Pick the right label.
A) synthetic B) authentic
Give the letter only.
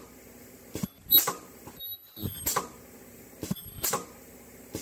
B